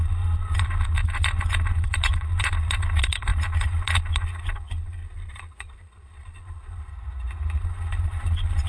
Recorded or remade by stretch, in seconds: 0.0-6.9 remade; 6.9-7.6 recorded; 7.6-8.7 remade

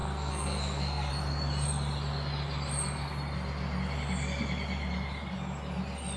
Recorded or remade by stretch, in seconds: 0.0-1.1 remade; 1.1-6.2 recorded

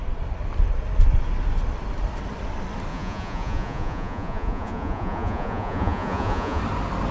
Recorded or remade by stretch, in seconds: 0.0-2.9 recorded; 2.9-6.6 remade; 6.6-7.1 recorded

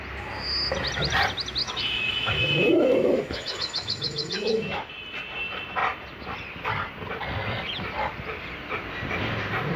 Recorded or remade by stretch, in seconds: 0.0-1.6 recorded; 1.6-4.9 remade; 4.9-9.8 recorded

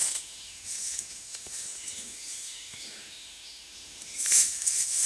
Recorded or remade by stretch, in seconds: 0.0-5.1 remade

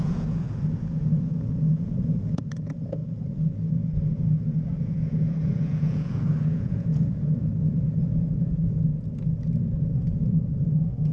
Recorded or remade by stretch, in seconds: 0.0-7.5 remade; 7.5-8.0 recorded; 8.0-8.9 remade; 8.9-9.8 recorded; 9.8-11.1 remade

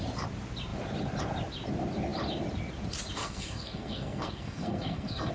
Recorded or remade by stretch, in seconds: 0.0-3.2 recorded; 3.2-5.3 remade